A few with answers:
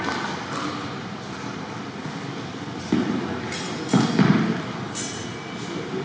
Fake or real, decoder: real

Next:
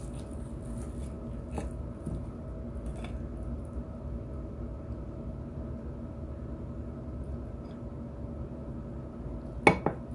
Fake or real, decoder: real